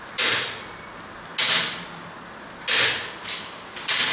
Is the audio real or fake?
real